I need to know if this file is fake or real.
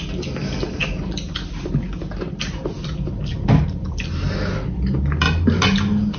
real